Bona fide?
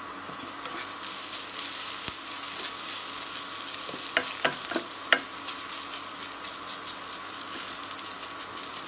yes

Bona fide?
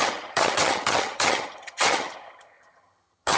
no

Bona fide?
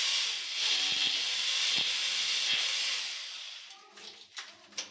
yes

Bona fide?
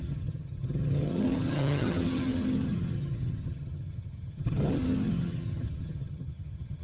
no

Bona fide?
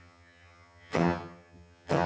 no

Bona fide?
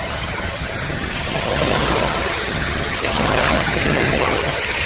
no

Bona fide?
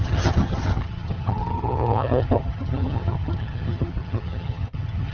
no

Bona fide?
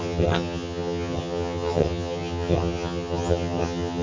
no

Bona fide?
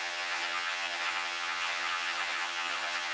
no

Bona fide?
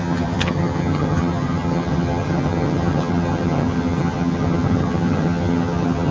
no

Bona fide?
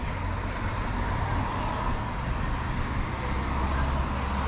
yes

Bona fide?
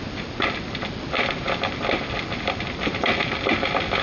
yes